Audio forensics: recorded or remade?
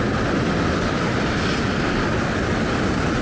recorded